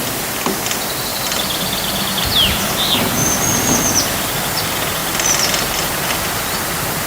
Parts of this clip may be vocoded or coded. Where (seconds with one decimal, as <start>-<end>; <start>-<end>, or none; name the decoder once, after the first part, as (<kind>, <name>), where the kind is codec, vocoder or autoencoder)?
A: 1.1-2.1 (vocoder, BigVGAN v2); 3.2-3.8; 5.0-5.9